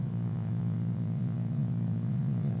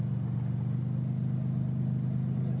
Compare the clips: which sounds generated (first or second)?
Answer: first